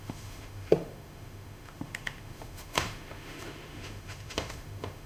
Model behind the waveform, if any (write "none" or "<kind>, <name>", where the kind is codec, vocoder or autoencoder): autoencoder, DAC-VAE